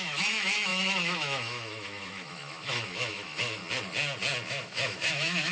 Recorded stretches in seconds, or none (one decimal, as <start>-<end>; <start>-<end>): 3.6-4.5